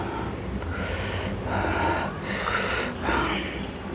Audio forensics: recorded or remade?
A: recorded